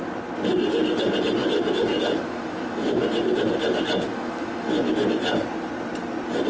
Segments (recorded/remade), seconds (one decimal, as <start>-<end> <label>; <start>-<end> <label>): 0.0-1.4 recorded; 1.4-3.2 remade; 3.2-4.1 recorded; 4.1-4.9 remade; 4.9-6.5 recorded